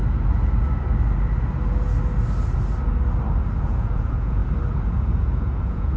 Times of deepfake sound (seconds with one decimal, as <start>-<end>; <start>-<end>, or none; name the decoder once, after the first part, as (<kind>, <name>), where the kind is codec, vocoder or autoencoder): 3.6-4.4 (vocoder, Vocos); 4.9-6.0